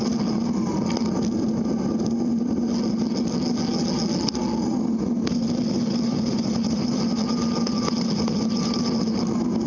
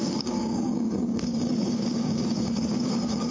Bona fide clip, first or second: first